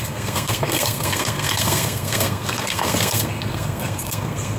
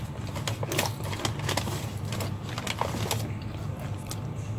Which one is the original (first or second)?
second